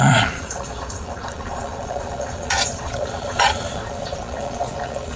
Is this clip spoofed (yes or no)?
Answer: yes